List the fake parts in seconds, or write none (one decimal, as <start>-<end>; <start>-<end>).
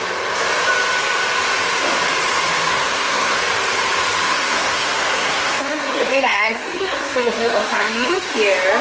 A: 2.7-3.4; 4.3-8.3